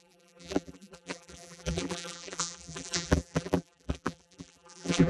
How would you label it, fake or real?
fake